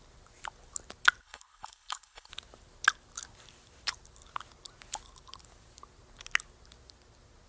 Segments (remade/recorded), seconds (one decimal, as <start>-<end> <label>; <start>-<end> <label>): 0.0-1.2 recorded; 1.2-2.3 remade; 2.3-7.5 recorded